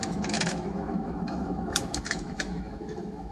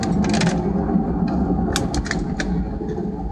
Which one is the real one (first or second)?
second